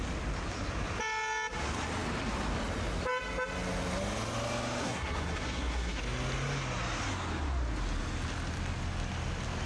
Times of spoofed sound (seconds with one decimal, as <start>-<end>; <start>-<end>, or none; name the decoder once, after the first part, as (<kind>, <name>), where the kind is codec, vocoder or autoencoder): 4.8-6.0 (codec, SNAC)